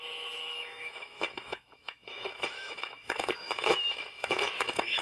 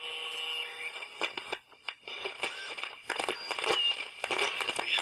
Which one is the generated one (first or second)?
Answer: first